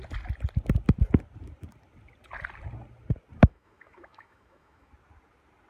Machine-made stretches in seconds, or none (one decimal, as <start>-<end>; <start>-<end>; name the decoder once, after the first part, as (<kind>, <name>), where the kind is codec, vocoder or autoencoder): 3.4-4.9 (autoencoder, DAC-VAE)